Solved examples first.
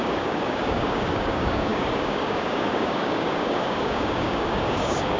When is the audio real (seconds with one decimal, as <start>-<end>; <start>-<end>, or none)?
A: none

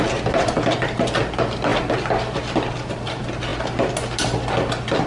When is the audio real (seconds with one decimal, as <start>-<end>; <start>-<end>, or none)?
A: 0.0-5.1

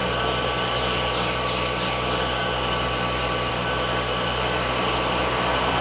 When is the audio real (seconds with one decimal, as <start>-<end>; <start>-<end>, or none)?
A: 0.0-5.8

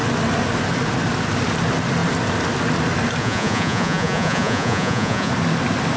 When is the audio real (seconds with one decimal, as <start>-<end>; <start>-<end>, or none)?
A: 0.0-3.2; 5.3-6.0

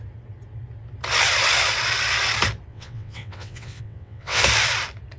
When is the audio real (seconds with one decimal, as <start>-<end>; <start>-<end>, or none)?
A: 0.0-2.7; 4.4-5.2

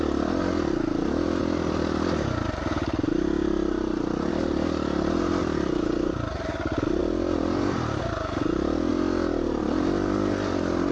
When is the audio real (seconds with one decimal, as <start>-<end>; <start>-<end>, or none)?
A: 0.0-7.0; 8.0-8.9; 9.6-10.9

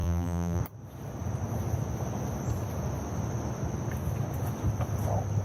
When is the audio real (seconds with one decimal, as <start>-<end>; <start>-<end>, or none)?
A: 0.6-5.4

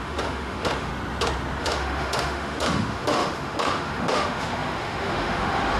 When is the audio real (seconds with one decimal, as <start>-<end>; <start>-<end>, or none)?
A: 0.9-1.6